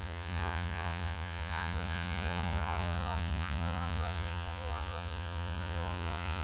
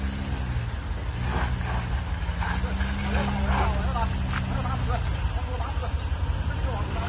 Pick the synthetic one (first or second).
first